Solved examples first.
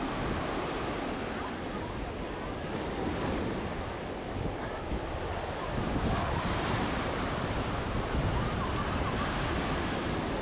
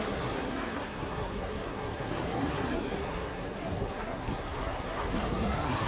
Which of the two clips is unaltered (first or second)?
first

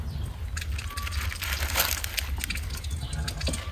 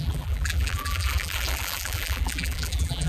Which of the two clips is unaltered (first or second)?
first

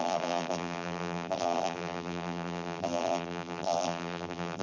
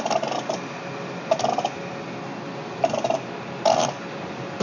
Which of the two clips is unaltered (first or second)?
second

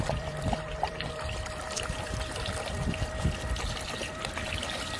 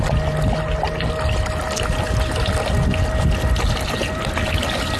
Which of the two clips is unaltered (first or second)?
second